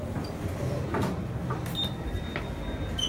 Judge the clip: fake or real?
real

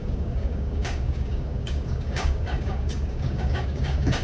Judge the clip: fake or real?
fake